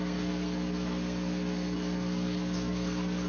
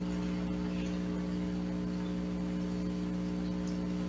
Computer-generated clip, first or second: first